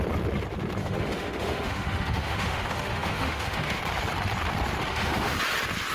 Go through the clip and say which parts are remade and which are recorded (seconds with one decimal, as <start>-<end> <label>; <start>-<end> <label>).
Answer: 0.0-0.8 recorded; 0.8-3.8 remade; 3.8-4.9 recorded; 4.9-5.4 remade; 5.4-5.9 recorded